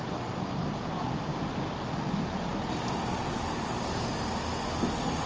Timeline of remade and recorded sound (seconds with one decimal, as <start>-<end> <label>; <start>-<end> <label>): 0.0-5.3 recorded